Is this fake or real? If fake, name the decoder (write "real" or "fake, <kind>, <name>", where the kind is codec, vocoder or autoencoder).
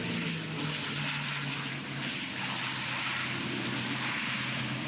real